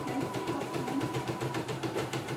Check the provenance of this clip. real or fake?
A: fake